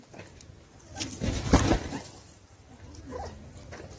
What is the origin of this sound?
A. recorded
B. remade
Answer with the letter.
A